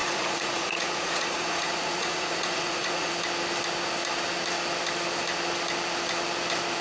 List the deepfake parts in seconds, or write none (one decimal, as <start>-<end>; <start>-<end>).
0.0-3.1